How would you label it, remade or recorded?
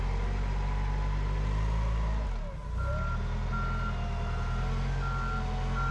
recorded